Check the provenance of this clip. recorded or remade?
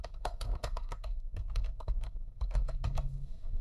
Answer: remade